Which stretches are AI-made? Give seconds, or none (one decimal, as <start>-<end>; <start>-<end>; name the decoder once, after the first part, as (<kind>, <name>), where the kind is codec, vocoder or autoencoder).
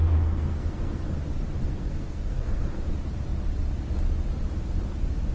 0.0-1.0 (codec, SNAC); 1.6-2.8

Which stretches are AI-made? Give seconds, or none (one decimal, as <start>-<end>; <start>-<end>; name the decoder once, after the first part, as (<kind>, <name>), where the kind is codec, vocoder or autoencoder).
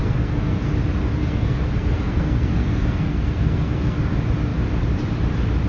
0.0-0.7 (codec, SNAC); 1.2-4.1